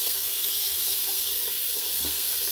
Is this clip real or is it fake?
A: fake